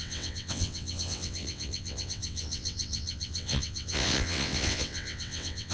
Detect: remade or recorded remade